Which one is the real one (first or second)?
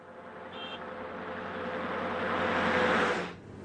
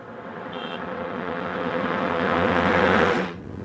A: first